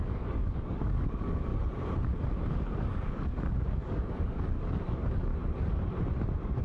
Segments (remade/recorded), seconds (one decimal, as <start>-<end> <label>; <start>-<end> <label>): 0.0-1.5 remade; 1.5-2.5 recorded; 2.5-5.3 remade; 5.3-6.6 recorded